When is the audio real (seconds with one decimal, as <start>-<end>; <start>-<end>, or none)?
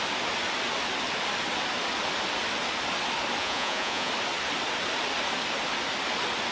0.0-3.4; 4.1-6.5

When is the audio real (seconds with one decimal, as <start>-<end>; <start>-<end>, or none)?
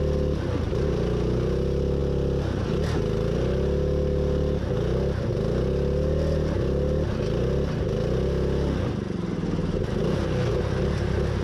0.0-11.4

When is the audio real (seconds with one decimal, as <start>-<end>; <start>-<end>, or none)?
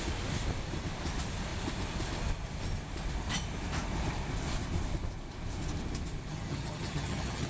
0.0-6.3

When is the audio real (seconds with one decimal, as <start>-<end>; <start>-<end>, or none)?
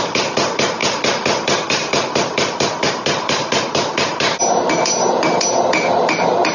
0.0-6.5